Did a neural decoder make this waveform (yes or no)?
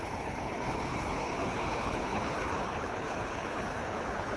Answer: yes